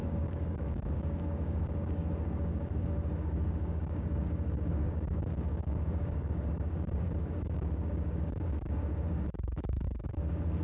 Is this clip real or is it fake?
fake